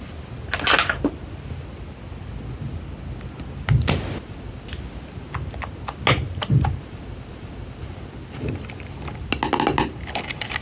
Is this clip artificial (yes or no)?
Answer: no